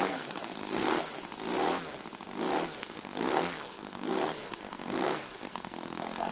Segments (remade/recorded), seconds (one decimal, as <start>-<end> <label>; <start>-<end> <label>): 0.0-1.1 remade; 1.1-2.8 recorded; 2.8-6.3 remade